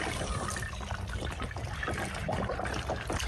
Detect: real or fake real